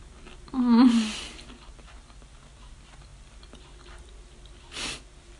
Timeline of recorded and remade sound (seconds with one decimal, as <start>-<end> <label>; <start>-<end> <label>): 0.0-5.4 recorded